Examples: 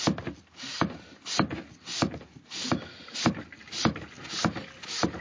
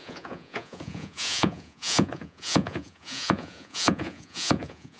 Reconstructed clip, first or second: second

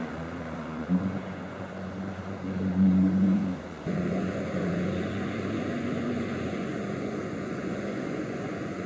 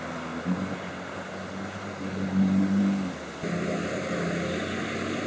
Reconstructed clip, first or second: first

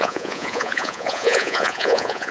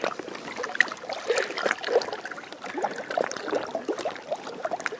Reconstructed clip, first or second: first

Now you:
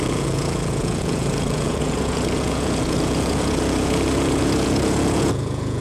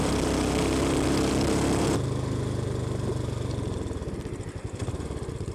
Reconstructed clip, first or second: first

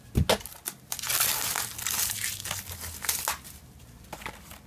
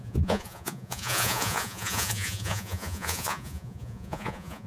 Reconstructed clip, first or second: second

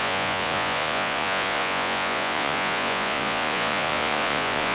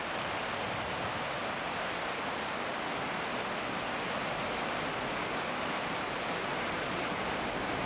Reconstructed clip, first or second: first